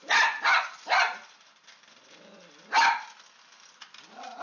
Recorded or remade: remade